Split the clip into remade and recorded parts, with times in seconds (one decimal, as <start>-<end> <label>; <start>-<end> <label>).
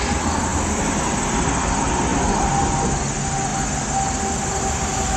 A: 0.0-0.5 recorded; 0.5-1.2 remade; 1.2-5.2 recorded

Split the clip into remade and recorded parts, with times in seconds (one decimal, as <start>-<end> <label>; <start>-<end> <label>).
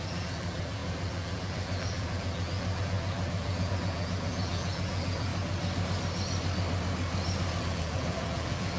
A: 0.0-5.3 remade; 5.3-7.6 recorded; 7.6-8.8 remade